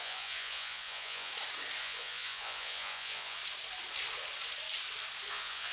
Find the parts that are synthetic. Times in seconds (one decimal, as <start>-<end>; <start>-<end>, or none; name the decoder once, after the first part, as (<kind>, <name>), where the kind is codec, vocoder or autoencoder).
0.0-1.3 (vocoder, Vocos); 1.8-3.4; 5.3-5.7